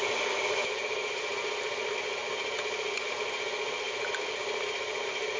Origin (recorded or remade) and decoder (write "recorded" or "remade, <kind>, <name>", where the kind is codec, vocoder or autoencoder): recorded